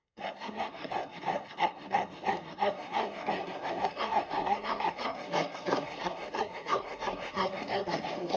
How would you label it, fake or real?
fake